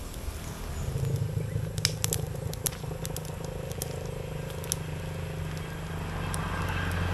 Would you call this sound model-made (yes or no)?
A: no